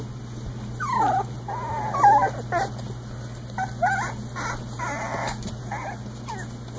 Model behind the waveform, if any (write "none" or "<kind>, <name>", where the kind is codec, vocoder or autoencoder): none